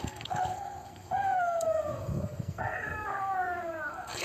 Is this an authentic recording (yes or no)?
no